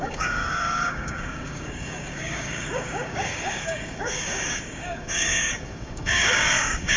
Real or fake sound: fake